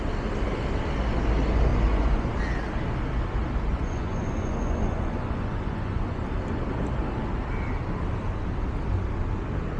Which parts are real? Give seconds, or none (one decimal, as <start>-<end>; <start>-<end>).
0.0-1.7; 2.3-3.7; 6.2-9.8